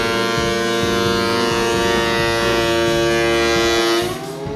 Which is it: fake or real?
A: real